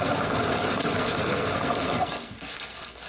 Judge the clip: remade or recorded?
remade